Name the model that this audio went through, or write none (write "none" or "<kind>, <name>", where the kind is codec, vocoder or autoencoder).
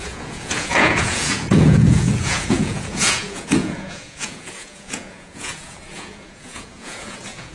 vocoder, Vocos